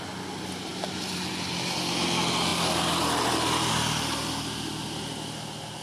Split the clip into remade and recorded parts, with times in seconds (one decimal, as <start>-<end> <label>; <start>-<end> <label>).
0.0-5.8 recorded